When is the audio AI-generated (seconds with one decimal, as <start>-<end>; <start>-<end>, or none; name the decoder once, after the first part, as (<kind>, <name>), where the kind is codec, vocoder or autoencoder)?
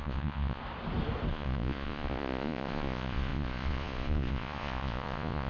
0.0-0.6 (vocoder, Vocos); 1.3-5.5